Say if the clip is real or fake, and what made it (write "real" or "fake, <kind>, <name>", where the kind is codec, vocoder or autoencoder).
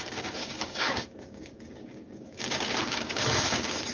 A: fake, codec, DAC